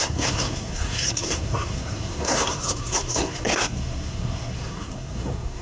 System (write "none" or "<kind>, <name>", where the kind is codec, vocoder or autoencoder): codec, SNAC